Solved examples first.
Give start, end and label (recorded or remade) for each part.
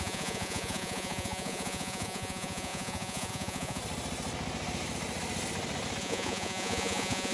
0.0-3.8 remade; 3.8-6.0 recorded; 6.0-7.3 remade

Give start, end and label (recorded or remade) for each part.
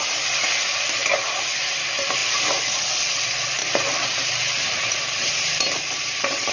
0.0-3.6 recorded; 3.6-6.5 remade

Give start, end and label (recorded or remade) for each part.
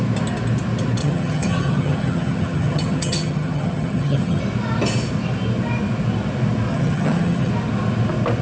0.0-1.0 recorded; 1.0-4.4 remade; 4.4-6.7 recorded; 6.7-7.5 remade; 7.5-8.4 recorded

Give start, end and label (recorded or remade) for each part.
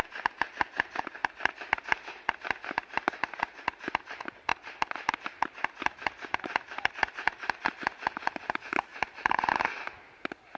0.0-10.6 recorded